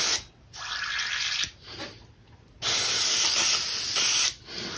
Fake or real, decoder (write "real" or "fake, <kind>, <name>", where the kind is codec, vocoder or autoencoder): real